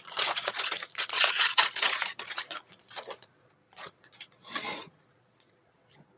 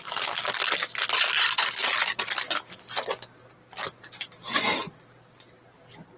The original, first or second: second